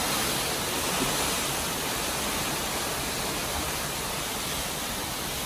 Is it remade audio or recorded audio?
recorded